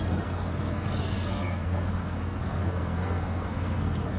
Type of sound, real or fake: fake